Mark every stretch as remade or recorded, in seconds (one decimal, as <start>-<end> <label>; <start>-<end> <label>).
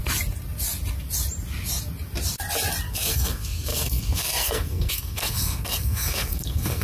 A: 0.0-2.9 recorded; 2.9-6.8 remade